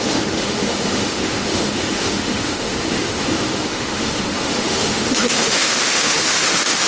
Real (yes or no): no